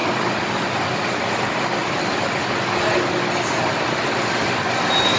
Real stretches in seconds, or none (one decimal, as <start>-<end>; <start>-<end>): 0.0-5.2